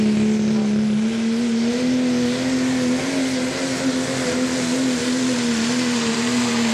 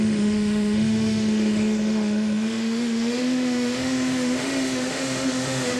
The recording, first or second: first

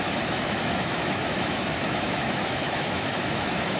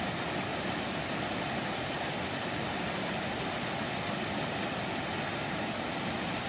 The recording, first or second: second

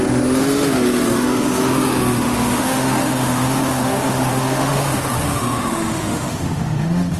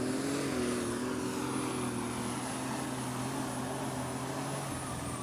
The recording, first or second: second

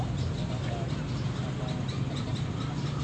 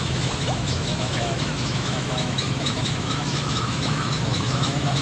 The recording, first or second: first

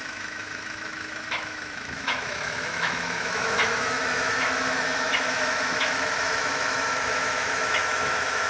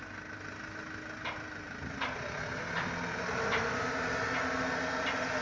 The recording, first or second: second